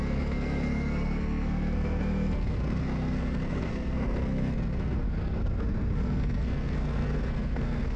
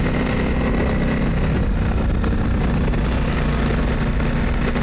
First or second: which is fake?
first